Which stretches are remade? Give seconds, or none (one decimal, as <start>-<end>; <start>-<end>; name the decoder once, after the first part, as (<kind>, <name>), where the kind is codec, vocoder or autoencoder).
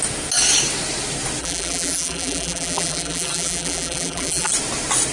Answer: 1.4-4.5 (vocoder, BigVGAN v2)